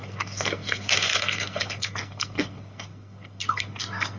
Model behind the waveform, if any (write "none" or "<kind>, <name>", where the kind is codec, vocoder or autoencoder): codec, SNAC